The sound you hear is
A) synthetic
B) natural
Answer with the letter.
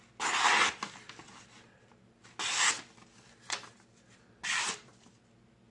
B